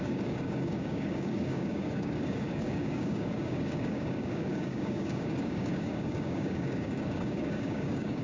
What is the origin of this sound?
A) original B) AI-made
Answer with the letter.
B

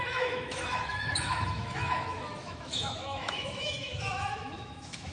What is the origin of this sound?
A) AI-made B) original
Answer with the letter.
A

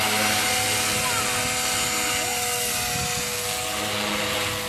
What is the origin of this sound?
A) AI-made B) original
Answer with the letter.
B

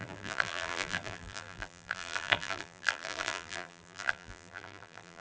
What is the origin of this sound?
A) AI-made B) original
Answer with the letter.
A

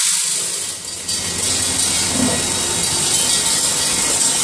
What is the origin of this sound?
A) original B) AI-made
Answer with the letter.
A